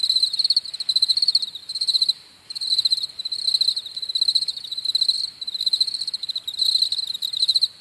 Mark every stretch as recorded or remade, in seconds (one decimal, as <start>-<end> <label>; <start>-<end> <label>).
0.0-7.8 recorded